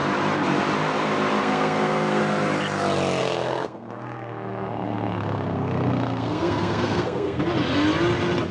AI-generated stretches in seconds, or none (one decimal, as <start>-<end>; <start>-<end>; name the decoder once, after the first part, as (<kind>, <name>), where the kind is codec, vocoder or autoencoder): 1.4-2.2 (codec, SNAC); 3.2-7.4